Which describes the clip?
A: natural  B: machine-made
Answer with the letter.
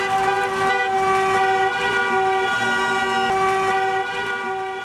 A